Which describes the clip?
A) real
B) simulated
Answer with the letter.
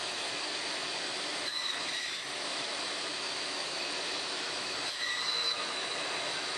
B